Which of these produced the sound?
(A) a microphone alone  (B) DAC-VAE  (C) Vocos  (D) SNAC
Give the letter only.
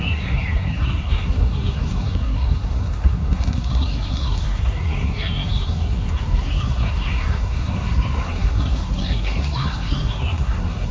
D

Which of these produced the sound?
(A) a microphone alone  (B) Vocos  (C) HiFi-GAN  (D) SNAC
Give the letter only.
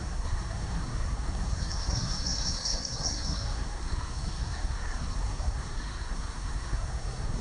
D